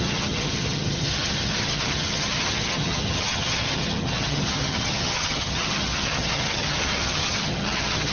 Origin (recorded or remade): remade